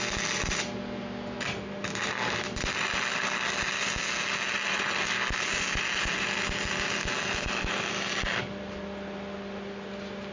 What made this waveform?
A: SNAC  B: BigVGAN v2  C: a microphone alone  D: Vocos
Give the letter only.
C